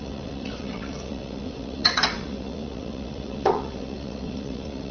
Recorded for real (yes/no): no